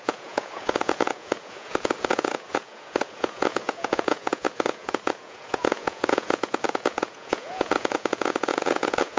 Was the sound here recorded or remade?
remade